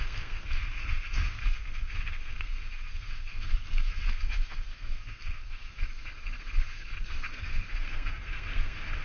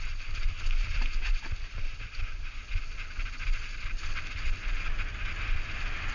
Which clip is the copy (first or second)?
first